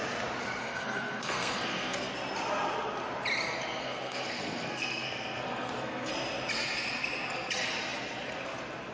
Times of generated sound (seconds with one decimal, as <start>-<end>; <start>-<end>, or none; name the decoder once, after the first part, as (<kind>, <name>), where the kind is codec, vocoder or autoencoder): 0.6-2.1 (codec, SNAC); 3.8-6.1